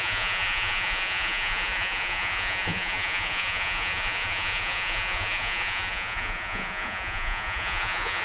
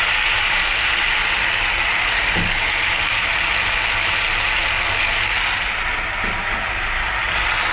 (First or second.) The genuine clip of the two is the second